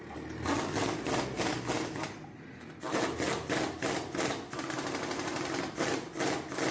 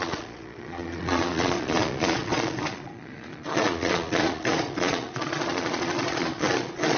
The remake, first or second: second